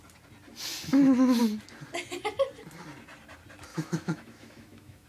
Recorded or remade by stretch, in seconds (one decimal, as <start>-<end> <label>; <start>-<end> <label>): 0.0-3.7 recorded; 3.7-5.1 remade